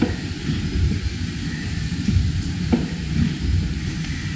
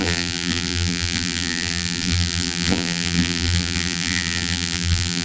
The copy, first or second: second